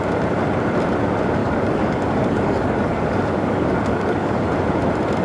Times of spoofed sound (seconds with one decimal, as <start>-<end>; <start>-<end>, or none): 1.4-4.5